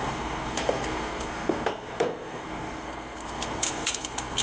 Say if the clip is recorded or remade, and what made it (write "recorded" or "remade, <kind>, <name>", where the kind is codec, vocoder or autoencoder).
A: remade, codec, SNAC